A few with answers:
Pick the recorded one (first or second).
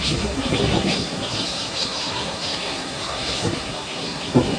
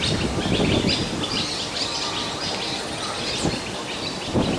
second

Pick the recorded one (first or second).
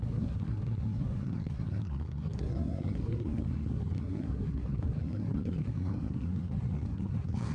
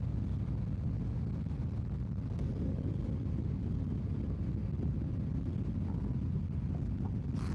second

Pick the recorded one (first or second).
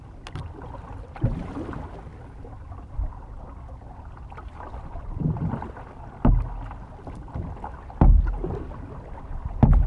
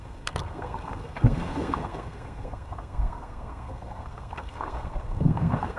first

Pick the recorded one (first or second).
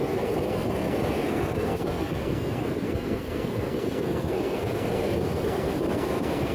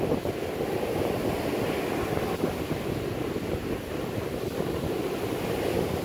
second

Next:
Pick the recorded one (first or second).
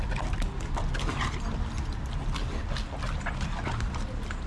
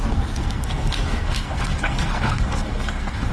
first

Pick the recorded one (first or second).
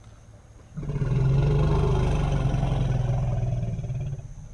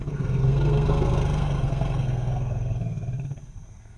first